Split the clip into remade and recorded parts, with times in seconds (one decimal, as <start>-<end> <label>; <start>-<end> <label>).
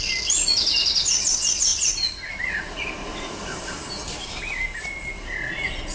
0.0-3.1 recorded; 3.1-3.8 remade; 3.8-5.9 recorded